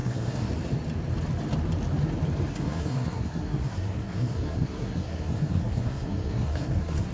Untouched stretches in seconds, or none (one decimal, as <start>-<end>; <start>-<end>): 0.5-2.5